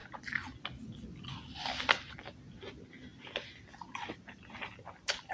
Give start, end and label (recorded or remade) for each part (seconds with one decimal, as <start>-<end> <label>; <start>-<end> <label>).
0.0-5.3 recorded

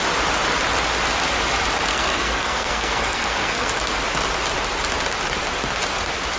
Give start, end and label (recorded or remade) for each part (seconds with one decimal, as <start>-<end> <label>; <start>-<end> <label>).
0.0-1.9 recorded; 1.9-3.7 remade; 3.7-6.4 recorded

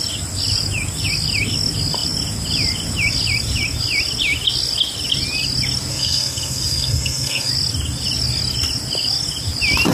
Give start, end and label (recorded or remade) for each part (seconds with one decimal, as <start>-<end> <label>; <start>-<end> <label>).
0.0-5.9 recorded; 5.9-7.5 remade; 7.5-9.9 recorded

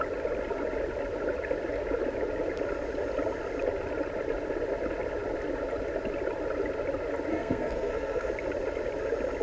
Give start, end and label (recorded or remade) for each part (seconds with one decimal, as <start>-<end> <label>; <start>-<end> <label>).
0.0-7.3 recorded; 7.3-8.3 remade; 8.3-9.4 recorded

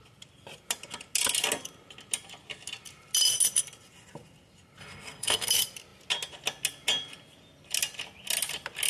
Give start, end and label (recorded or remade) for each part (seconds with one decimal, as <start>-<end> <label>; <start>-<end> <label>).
0.0-4.8 recorded; 4.8-5.5 remade; 5.5-8.9 recorded

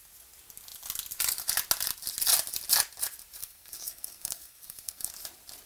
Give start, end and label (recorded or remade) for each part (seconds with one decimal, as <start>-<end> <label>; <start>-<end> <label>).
0.0-3.4 recorded; 3.4-5.1 remade; 5.1-5.7 recorded

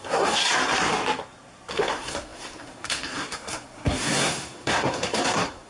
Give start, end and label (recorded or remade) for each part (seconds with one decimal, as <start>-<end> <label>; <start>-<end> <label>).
0.0-0.4 remade; 0.4-1.7 recorded; 1.7-5.7 remade

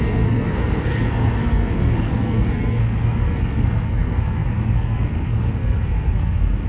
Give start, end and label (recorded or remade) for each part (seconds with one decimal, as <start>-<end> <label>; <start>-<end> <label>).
0.0-6.7 remade